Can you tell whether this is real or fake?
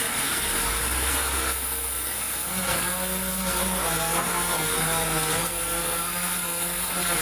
fake